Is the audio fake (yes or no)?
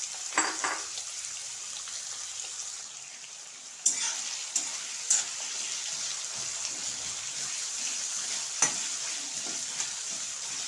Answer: no